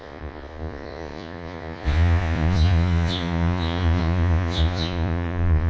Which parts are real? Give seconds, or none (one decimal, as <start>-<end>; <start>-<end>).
none